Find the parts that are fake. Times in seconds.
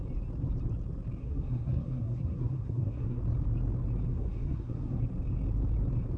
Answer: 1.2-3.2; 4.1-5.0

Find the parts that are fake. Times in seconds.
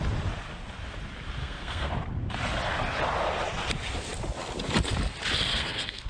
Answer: 1.4-1.9; 5.5-6.1